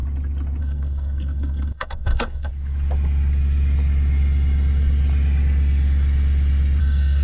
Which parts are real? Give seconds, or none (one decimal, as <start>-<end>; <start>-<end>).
0.0-0.6; 2.5-6.8